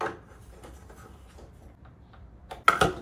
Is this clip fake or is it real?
real